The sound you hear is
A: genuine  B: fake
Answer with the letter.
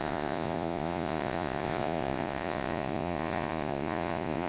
B